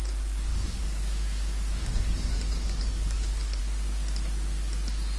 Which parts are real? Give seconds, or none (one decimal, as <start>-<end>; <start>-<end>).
0.0-0.5; 3.6-5.2